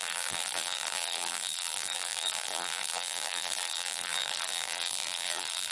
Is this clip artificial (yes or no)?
yes